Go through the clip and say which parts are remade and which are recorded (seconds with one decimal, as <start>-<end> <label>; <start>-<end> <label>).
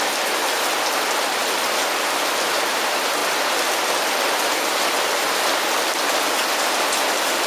0.0-7.5 recorded